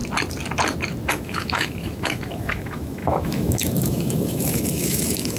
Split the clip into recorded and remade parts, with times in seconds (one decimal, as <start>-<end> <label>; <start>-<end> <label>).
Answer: 0.0-1.1 recorded; 1.1-5.4 remade